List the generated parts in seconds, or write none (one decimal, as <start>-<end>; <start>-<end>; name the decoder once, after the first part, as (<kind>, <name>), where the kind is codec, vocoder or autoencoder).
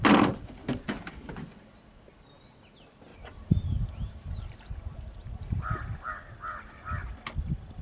0.6-1.3 (vocoder, BigVGAN v2); 3.1-6.1